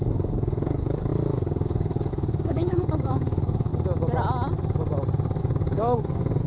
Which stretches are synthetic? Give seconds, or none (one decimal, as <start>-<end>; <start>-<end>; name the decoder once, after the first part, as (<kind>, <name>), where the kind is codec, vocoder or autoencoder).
0.0-3.7 (codec, DAC); 5.4-6.5

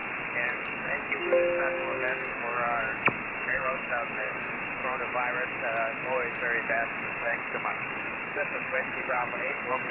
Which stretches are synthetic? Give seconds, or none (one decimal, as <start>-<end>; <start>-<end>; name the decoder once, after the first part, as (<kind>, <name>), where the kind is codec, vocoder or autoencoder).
0.5-4.8 (codec, DAC); 6.6-9.9

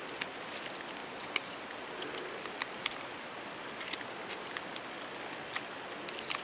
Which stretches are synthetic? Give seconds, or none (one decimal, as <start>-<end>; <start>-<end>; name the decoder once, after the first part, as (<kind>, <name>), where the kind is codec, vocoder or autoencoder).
none